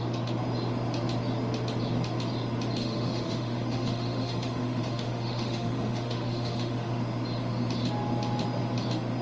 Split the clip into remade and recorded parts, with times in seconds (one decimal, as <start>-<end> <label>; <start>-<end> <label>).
0.0-2.8 recorded; 2.8-7.0 remade; 7.0-9.2 recorded